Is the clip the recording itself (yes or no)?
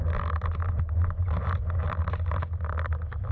yes